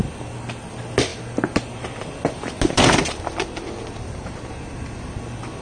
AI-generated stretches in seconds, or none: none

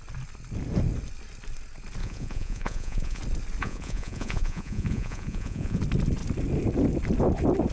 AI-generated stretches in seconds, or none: 2.0-3.2 (vocoder, Vocos); 3.6-5.8

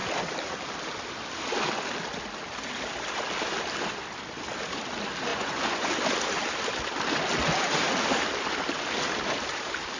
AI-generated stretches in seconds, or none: 5.3-5.9 (vocoder, Vocos)